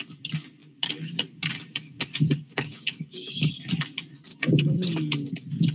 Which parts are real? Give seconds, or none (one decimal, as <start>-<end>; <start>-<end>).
0.0-2.5; 3.5-4.3; 5.3-5.7